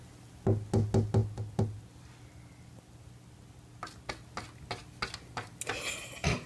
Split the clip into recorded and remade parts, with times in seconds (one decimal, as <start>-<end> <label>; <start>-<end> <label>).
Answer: 0.0-6.5 recorded